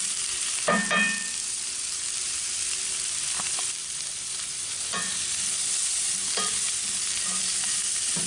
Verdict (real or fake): fake